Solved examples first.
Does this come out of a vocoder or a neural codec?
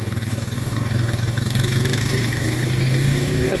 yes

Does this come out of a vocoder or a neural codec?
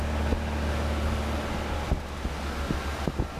no